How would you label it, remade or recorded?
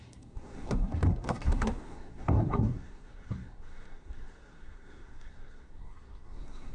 remade